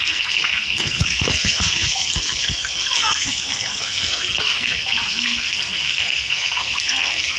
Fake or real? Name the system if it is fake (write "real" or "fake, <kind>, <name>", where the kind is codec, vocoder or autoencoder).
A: fake, codec, SNAC